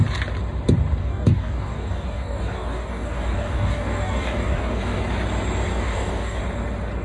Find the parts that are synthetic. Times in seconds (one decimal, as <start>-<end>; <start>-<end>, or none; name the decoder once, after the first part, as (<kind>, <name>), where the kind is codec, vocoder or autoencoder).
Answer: 1.0-5.0 (codec, DAC); 5.7-6.4